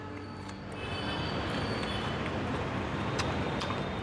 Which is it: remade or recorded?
recorded